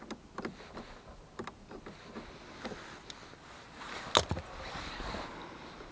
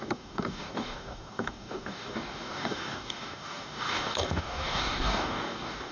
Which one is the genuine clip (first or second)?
first